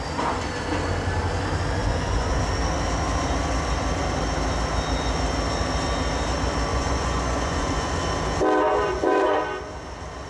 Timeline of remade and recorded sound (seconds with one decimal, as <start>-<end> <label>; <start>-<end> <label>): 0.0-1.8 recorded; 1.8-2.4 remade; 2.4-6.7 recorded; 6.7-8.0 remade; 8.0-8.7 recorded; 8.7-9.4 remade; 9.4-10.3 recorded